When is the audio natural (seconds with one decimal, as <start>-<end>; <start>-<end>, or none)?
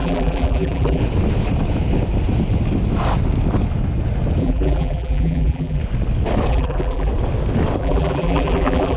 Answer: 1.0-4.4; 5.8-6.5; 7.1-7.8